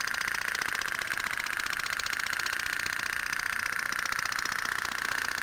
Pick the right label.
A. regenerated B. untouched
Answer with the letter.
B